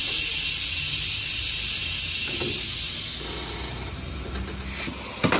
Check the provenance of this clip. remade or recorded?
recorded